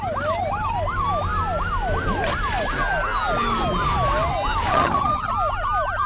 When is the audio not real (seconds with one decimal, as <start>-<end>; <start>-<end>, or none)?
4.7-5.3